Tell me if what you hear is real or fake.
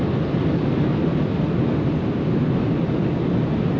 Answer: real